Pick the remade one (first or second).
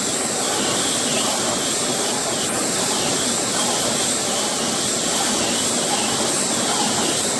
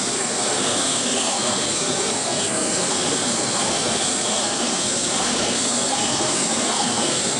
second